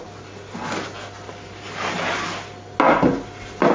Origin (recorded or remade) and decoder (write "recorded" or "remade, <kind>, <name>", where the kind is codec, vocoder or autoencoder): recorded